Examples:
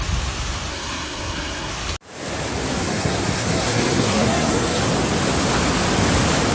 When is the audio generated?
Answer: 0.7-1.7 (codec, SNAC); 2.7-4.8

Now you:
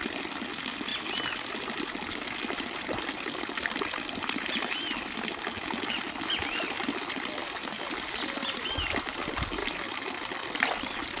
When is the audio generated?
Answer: none

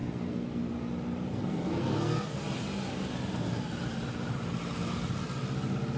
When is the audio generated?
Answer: 0.0-0.6 (codec, SNAC); 1.3-2.4

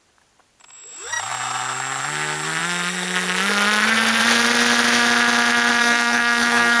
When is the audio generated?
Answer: 5.8-6.8 (codec, SNAC)

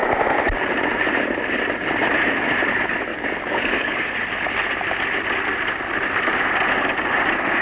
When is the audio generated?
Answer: 3.1-4.1 (codec, DAC)